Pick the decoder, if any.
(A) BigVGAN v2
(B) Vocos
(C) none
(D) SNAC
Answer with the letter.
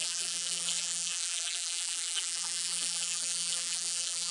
A